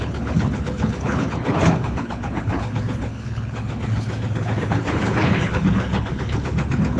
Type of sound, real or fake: fake